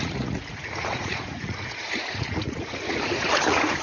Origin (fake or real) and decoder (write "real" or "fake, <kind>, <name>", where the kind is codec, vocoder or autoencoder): fake, vocoder, Vocos